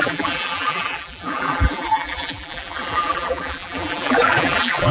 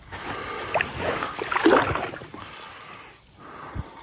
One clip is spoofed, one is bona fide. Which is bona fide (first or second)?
second